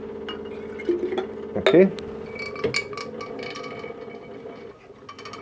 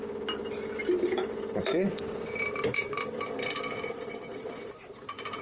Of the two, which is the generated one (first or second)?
second